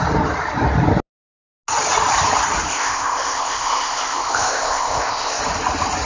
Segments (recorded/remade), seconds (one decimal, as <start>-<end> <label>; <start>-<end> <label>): 0.0-2.7 recorded; 2.7-5.4 remade; 5.4-6.0 recorded